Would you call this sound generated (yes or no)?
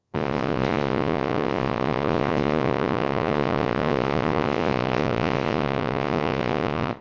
yes